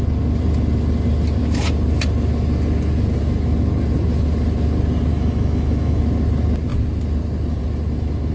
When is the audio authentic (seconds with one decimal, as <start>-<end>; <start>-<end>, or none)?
0.0-5.1; 6.0-8.3